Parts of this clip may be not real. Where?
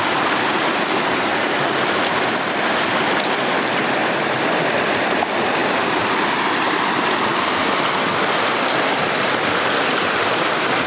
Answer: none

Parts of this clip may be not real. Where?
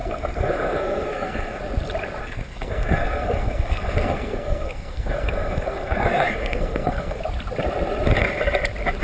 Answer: 0.0-1.6 (codec, SNAC); 2.2-7.2